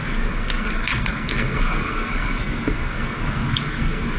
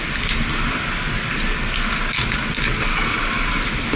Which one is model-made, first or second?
first